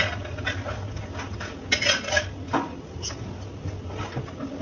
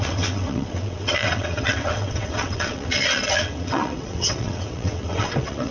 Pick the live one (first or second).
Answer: first